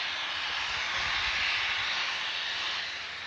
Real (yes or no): yes